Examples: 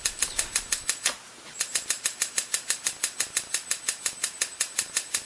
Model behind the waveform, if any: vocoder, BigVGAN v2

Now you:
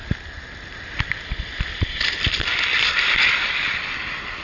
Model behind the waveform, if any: vocoder, BigVGAN v2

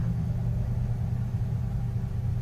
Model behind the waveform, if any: none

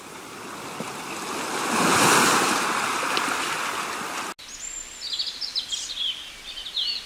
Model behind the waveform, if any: none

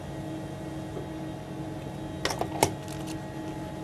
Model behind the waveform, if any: none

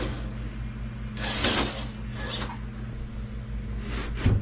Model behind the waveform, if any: none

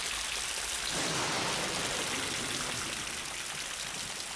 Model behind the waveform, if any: none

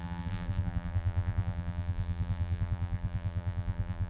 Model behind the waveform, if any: vocoder, BigVGAN v2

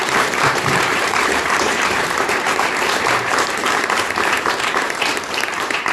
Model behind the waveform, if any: vocoder, BigVGAN v2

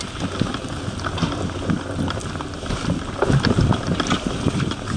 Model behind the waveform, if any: none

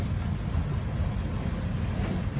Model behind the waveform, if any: none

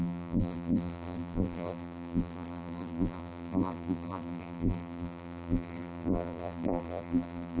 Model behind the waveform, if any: vocoder, BigVGAN v2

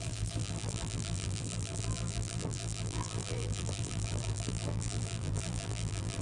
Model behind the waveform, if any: vocoder, BigVGAN v2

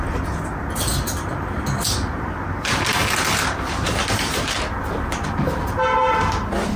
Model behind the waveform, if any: none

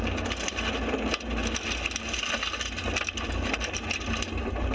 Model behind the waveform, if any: none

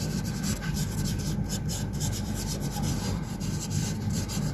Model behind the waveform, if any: vocoder, BigVGAN v2